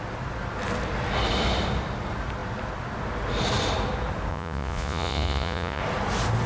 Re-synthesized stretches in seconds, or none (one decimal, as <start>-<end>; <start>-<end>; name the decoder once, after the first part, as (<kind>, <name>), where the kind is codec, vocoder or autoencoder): 4.3-5.8 (vocoder, Vocos)